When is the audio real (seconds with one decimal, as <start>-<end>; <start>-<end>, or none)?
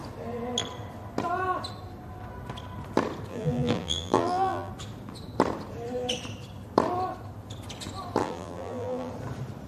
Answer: 0.0-3.3; 4.7-8.2; 9.1-9.7